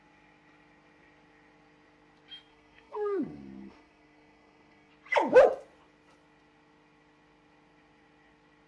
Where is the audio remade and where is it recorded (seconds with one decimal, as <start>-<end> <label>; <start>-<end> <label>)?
0.0-2.5 recorded; 2.5-4.9 remade; 4.9-8.7 recorded